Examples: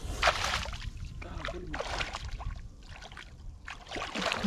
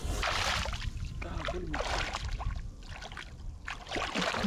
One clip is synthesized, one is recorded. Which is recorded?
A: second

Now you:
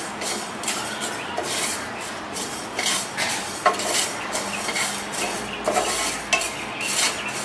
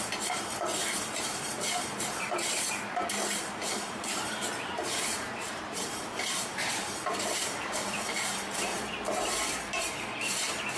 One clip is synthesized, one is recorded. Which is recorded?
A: first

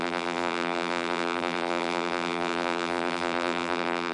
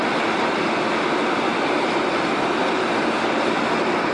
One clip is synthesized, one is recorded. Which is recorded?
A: second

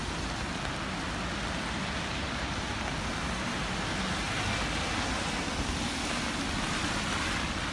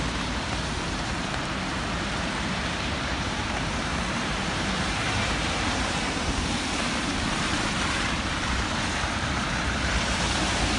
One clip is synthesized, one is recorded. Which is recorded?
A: first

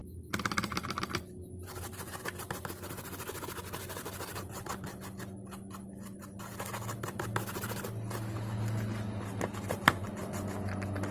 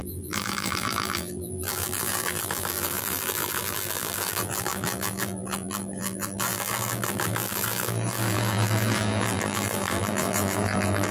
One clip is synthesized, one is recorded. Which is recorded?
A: first